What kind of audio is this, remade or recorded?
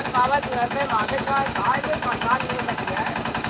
remade